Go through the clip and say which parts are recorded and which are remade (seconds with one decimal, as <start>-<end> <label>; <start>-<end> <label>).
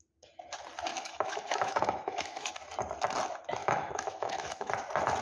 0.0-0.9 recorded; 0.9-2.5 remade; 2.5-3.6 recorded; 3.6-4.7 remade; 4.7-5.2 recorded